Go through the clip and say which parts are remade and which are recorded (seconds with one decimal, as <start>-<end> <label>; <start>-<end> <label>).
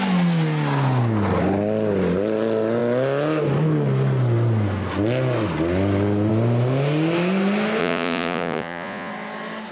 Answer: 0.0-7.8 recorded; 7.8-9.1 remade; 9.1-9.7 recorded